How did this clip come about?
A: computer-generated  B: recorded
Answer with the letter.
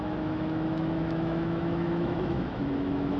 A